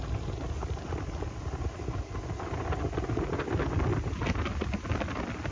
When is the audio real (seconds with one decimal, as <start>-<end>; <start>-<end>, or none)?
0.0-5.5